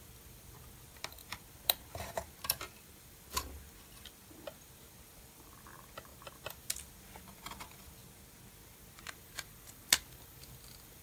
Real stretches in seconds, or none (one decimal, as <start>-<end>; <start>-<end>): 8.0-9.1